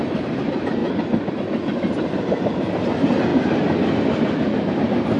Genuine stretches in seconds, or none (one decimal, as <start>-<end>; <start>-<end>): 0.8-1.3; 3.3-4.7